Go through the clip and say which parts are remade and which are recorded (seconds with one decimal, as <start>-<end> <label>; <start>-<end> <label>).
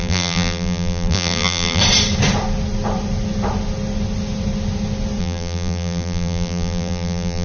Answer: 0.0-1.8 remade; 1.8-5.2 recorded; 5.2-7.4 remade